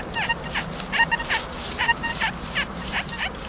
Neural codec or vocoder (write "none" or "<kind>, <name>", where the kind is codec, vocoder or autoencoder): vocoder, BigVGAN v2